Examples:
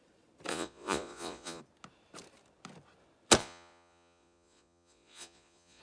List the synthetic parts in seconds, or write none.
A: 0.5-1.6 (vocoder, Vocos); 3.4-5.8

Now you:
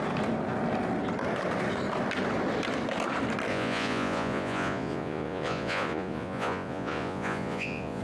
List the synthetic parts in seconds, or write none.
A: 3.5-8.0 (vocoder, Vocos)

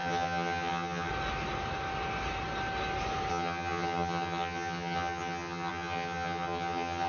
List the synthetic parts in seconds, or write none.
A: 0.0-1.1 (vocoder, HiFi-GAN); 3.3-7.1